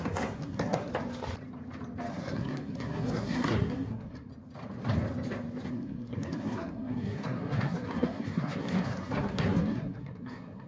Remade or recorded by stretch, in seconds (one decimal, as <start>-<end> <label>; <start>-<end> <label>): 0.0-0.9 remade; 0.9-2.1 recorded; 2.1-4.3 remade; 4.3-5.7 recorded; 5.7-10.7 remade